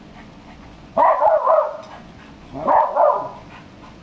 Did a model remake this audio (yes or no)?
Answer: yes